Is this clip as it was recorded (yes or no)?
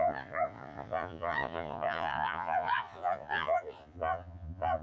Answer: no